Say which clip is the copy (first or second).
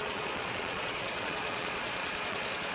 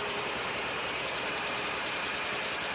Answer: first